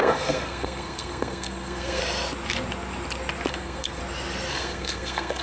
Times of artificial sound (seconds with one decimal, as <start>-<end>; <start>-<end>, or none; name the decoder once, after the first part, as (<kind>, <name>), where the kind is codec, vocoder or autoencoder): 0.0-2.0 (codec, SNAC); 3.5-4.0; 4.5-5.4